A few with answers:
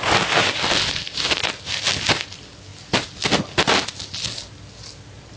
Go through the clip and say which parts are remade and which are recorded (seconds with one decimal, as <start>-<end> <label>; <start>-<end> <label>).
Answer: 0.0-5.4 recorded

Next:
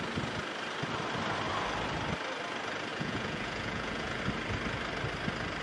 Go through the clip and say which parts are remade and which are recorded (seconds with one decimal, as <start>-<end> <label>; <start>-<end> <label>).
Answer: 0.0-2.9 recorded; 2.9-4.2 remade; 4.2-5.6 recorded

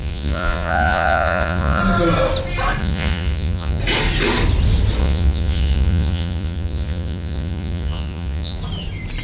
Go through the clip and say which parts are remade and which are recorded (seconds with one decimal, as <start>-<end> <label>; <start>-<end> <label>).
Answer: 0.0-1.8 remade; 1.8-2.8 recorded; 2.8-3.8 remade; 3.8-5.0 recorded; 5.0-8.6 remade; 8.6-9.2 recorded